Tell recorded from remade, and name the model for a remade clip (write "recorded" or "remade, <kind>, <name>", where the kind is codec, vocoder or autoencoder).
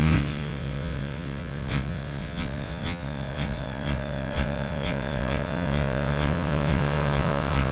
remade, vocoder, WaveNeXt